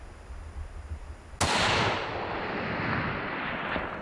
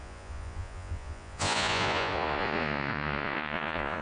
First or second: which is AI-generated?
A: second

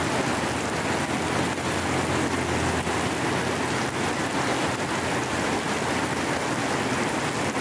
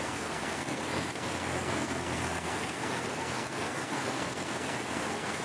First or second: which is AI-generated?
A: second